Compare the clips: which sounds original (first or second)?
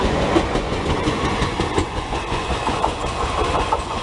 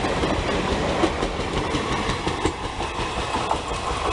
second